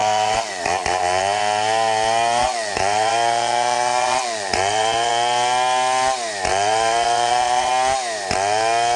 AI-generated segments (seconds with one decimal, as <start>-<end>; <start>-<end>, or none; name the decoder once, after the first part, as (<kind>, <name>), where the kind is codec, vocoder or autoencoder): 0.0-1.4 (vocoder, Vocos); 2.4-5.1; 6.5-7.7